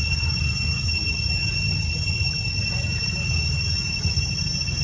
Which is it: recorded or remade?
recorded